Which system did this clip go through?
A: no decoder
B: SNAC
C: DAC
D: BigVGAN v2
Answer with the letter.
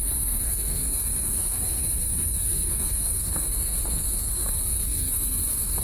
B